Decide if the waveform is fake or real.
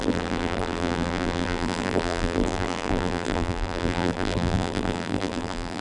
fake